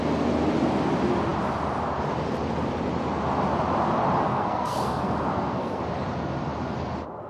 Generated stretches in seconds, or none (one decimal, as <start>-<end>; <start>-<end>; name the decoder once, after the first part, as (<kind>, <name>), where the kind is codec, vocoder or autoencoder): 4.3-5.8 (codec, SNAC)